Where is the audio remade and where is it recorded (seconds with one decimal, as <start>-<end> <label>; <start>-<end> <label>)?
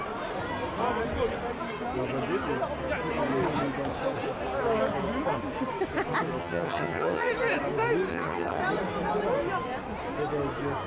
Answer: 0.0-6.4 recorded; 6.4-7.3 remade; 7.3-8.1 recorded; 8.1-8.6 remade; 8.6-10.9 recorded